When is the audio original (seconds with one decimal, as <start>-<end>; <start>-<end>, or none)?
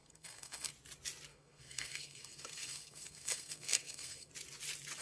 0.7-1.3; 4.3-5.0